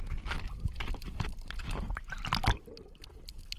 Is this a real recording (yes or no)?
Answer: no